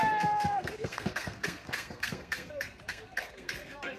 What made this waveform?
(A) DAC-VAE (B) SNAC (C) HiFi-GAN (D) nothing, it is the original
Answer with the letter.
B